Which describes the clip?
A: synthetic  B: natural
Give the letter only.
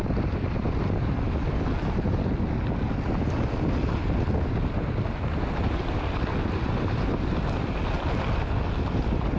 B